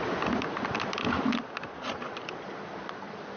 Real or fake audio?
real